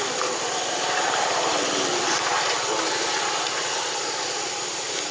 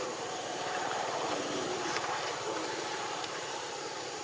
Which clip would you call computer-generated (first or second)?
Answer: second